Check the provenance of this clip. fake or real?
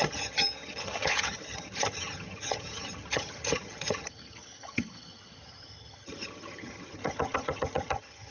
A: fake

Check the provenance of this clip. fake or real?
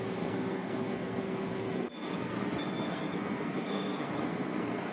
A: fake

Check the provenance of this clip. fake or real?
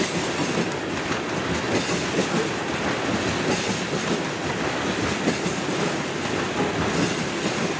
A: real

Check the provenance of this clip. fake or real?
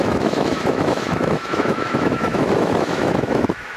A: fake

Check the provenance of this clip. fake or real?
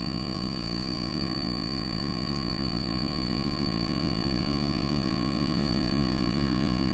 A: fake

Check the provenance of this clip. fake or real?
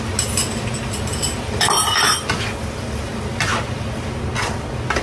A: real